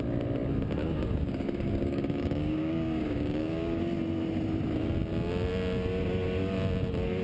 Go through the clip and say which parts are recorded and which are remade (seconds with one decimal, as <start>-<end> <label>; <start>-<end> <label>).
0.0-0.8 recorded; 0.8-3.8 remade; 3.8-7.2 recorded